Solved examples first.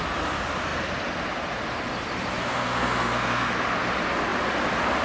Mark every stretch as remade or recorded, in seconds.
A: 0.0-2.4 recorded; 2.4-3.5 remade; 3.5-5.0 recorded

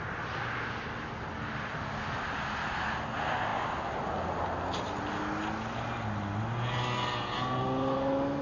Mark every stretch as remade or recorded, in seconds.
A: 0.0-8.4 recorded

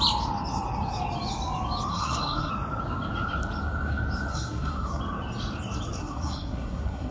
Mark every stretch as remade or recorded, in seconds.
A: 0.0-1.9 recorded; 1.9-2.5 remade; 2.5-4.3 recorded; 4.3-5.0 remade; 5.0-6.0 recorded; 6.0-7.1 remade

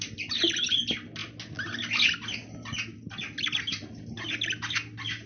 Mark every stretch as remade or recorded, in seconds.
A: 0.0-5.3 recorded

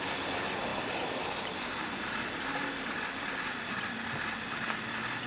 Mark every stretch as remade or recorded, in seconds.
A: 0.0-5.3 recorded

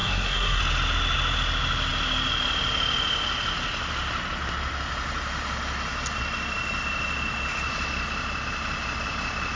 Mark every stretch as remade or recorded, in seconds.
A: 0.0-0.6 remade; 0.6-9.6 recorded

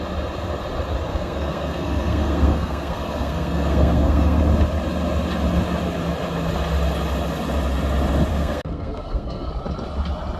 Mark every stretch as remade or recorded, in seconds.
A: 0.0-1.1 recorded; 1.1-4.4 remade; 4.4-8.3 recorded; 8.3-9.5 remade; 9.5-10.4 recorded